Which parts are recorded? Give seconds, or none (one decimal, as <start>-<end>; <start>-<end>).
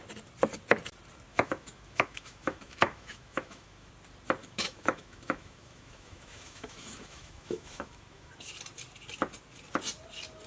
0.0-1.3; 3.9-4.4; 8.3-10.5